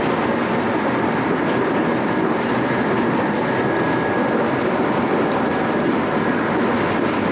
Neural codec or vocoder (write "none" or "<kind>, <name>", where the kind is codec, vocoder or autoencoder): none